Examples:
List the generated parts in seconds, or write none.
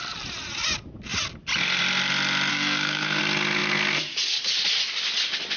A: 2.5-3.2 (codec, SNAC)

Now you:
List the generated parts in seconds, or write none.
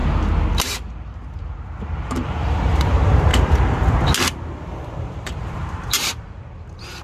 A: 2.1-3.3 (vocoder, BigVGAN v2); 5.0-7.0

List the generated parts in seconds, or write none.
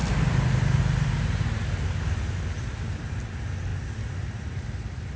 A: none